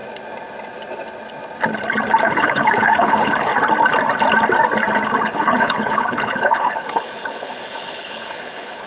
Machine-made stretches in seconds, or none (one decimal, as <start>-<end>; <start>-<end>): 2.2-3.5; 5.2-8.9